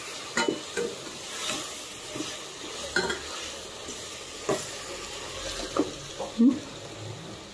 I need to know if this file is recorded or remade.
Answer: recorded